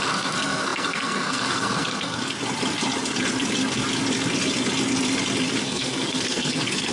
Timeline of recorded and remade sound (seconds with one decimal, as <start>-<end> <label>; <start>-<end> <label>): 0.0-2.2 remade; 2.2-5.6 recorded; 5.6-6.9 remade